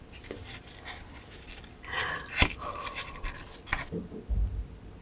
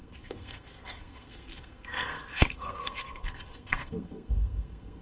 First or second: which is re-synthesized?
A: second